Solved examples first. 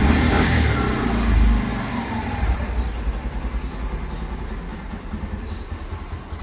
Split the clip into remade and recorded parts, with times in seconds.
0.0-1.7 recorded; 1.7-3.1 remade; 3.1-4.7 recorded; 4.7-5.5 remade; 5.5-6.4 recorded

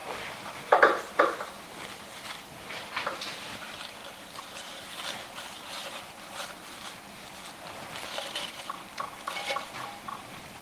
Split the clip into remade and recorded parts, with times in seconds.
0.0-10.6 recorded

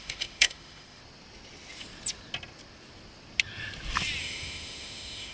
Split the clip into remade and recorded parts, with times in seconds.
0.0-1.0 remade; 1.0-4.2 recorded; 4.2-5.3 remade

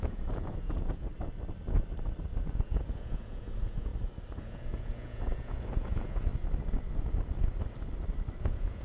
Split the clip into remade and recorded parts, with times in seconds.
0.0-1.1 remade; 1.1-2.5 recorded; 2.5-3.9 remade; 3.9-4.4 recorded; 4.4-6.3 remade; 6.3-8.4 recorded; 8.4-8.8 remade

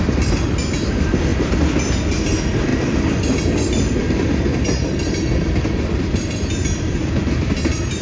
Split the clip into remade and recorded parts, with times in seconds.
0.0-1.3 remade; 1.3-1.8 recorded; 1.8-8.0 remade

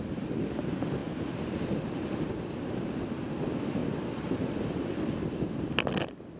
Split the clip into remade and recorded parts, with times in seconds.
0.0-6.4 recorded

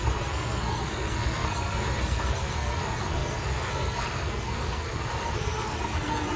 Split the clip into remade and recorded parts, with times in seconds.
0.0-6.4 remade

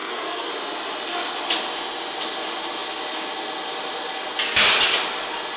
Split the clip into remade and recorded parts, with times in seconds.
0.0-0.5 remade; 0.5-5.6 recorded